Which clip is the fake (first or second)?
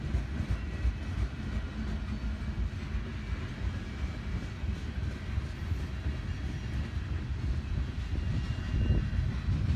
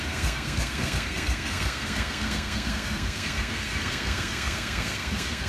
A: second